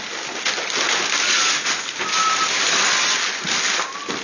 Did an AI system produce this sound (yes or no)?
no